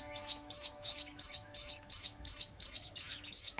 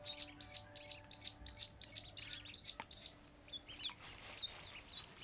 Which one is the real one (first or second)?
second